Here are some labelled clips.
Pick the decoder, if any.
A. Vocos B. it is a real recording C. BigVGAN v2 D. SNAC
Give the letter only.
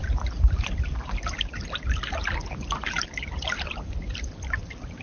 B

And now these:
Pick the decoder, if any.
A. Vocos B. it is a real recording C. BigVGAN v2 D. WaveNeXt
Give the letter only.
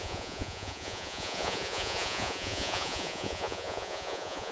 A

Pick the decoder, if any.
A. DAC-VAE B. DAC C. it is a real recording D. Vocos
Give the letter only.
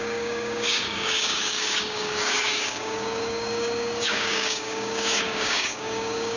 B